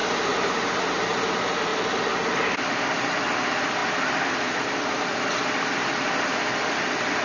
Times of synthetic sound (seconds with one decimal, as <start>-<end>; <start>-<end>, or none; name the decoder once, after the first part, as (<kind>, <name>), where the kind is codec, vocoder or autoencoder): 0.5-7.2 (vocoder, BigVGAN v2)